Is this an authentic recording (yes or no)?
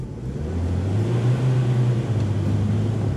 yes